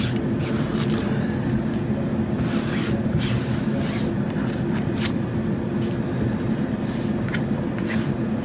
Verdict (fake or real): real